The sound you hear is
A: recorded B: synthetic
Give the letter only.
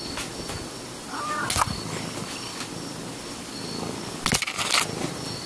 A